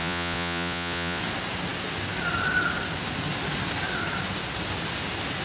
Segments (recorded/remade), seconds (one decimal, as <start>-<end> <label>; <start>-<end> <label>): 0.0-1.2 remade; 1.2-5.4 recorded